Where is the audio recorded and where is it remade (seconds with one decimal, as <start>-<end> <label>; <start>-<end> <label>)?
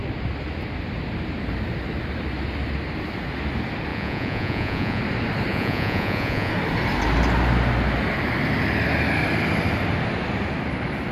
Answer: 0.0-3.9 recorded; 3.9-5.0 remade; 5.0-5.5 recorded; 5.5-6.5 remade; 6.5-11.1 recorded